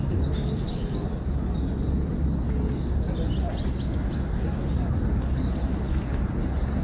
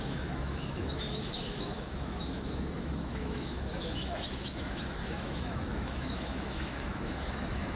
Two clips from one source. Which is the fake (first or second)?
second